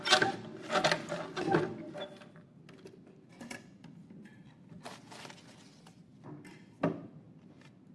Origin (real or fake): real